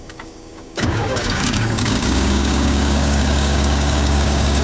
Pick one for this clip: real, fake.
fake